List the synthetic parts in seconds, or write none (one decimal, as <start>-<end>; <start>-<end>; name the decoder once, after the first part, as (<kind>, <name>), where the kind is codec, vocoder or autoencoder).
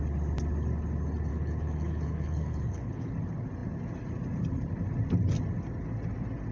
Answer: 1.3-3.1 (codec, HILCodec)